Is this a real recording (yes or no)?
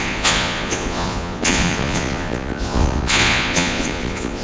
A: no